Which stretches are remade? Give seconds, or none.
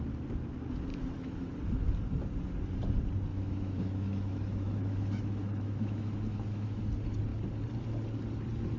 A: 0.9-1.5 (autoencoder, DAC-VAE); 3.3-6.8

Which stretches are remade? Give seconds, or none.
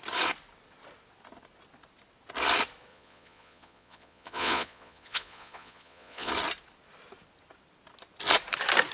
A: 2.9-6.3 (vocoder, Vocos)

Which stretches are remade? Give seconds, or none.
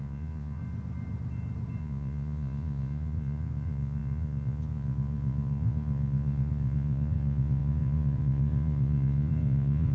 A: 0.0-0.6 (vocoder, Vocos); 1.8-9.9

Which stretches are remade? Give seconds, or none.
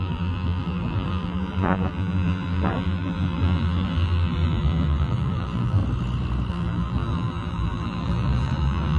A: 0.0-5.8 (vocoder, BigVGAN v2); 6.5-9.0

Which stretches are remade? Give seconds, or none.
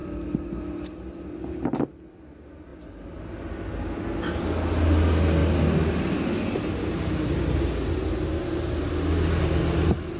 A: none